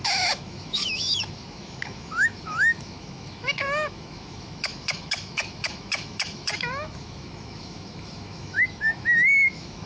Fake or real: fake